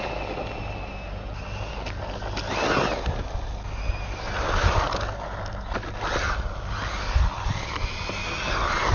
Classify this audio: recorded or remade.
recorded